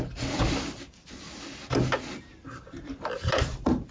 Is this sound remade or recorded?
recorded